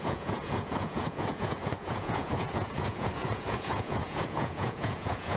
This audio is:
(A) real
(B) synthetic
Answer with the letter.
B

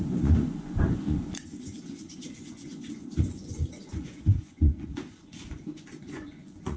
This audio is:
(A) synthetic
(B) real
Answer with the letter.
A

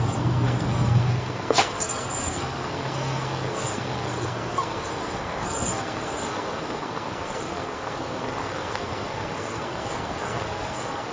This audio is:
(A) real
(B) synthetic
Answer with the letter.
B